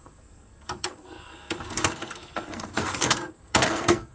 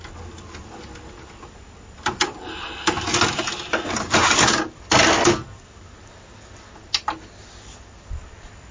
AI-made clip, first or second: first